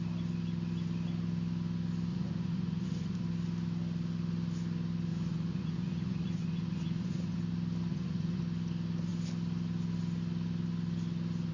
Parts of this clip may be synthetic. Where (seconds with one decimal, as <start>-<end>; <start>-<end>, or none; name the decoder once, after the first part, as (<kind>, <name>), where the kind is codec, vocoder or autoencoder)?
2.1-3.2 (vocoder, Vocos); 5.1-7.4; 7.9-8.4

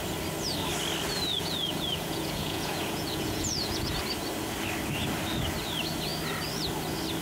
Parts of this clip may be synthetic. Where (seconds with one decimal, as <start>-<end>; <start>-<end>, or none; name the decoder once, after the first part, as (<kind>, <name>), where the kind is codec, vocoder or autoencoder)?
1.3-4.0 (vocoder, Vocos)

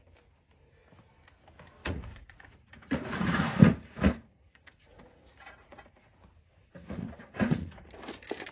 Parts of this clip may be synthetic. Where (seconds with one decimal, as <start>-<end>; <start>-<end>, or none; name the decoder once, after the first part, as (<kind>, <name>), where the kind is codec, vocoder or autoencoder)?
1.8-6.1 (vocoder, Vocos); 6.6-7.9

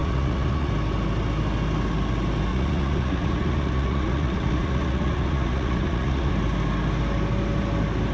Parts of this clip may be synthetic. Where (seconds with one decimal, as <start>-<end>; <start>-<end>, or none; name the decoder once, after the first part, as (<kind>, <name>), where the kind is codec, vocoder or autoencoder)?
0.0-0.7 (vocoder, Vocos); 2.5-6.3

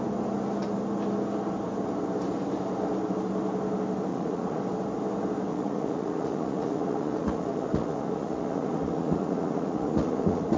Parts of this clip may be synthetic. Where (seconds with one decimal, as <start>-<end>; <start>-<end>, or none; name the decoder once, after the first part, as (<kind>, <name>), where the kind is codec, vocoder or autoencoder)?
4.1-4.6 (vocoder, Vocos); 5.5-10.6

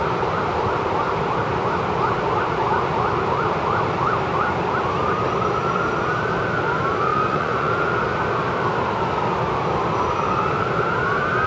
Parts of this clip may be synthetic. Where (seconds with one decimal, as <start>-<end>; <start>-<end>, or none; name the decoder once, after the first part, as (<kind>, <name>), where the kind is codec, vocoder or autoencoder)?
7.1-7.7 (vocoder, Vocos)

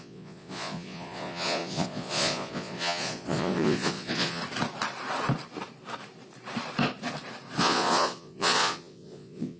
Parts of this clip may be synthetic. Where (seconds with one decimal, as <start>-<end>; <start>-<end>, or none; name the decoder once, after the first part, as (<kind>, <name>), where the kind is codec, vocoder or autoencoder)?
0.0-4.4 (vocoder, Vocos); 7.6-9.6